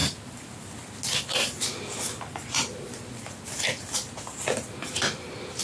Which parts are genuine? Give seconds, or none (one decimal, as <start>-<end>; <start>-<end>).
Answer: 0.0-5.6